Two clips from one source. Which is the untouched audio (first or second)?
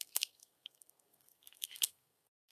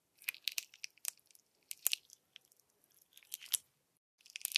second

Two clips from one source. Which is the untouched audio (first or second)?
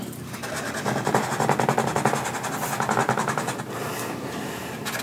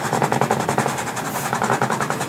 first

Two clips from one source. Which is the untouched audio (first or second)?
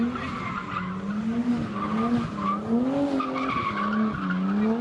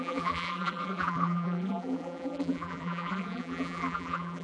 first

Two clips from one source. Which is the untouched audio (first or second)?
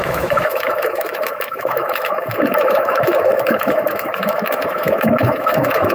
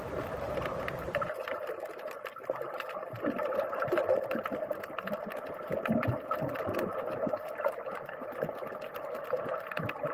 second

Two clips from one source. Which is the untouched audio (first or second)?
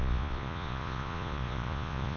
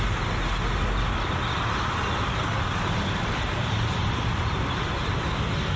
second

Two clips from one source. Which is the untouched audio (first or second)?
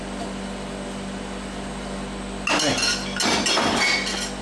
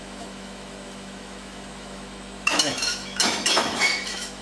first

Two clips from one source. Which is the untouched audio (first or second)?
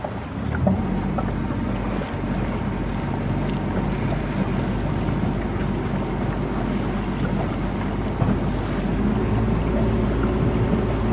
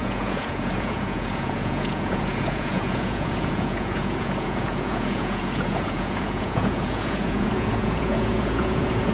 first